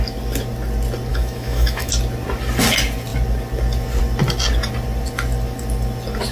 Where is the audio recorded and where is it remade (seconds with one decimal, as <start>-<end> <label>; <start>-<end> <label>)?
0.0-1.1 recorded; 1.1-1.9 remade; 1.9-6.3 recorded